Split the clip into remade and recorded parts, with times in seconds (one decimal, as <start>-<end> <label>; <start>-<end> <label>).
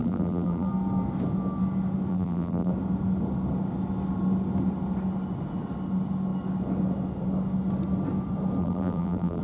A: 0.0-0.7 remade; 0.7-2.1 recorded; 2.1-2.7 remade; 2.7-8.6 recorded; 8.6-9.4 remade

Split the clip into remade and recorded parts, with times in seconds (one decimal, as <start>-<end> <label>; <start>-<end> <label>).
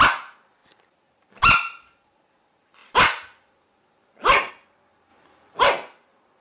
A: 0.0-0.6 recorded; 0.6-2.2 remade; 2.2-2.8 recorded; 2.8-4.5 remade; 4.5-5.1 recorded; 5.1-5.6 remade; 5.6-6.4 recorded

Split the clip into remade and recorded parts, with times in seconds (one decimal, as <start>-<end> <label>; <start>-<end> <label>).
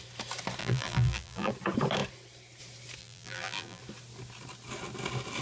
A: 0.0-0.6 recorded; 0.6-1.5 remade; 1.5-3.0 recorded; 3.0-3.8 remade; 3.8-5.4 recorded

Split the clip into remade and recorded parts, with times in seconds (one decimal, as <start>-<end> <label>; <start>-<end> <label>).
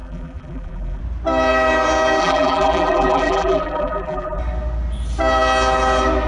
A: 0.0-1.0 remade; 1.0-2.2 recorded; 2.2-4.4 remade; 4.4-6.3 recorded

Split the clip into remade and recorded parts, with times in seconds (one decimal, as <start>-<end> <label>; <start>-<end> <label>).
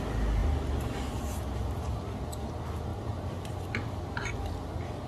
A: 0.0-2.9 recorded; 2.9-3.9 remade; 3.9-5.1 recorded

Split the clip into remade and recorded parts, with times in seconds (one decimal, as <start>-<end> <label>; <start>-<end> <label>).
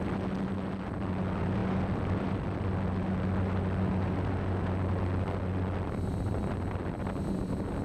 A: 0.0-7.8 recorded